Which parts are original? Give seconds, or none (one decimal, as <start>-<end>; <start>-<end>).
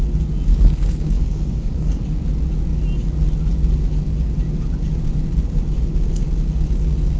0.0-0.5; 2.0-7.2